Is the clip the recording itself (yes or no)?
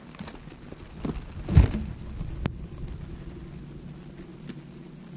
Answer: yes